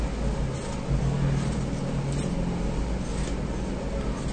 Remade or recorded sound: recorded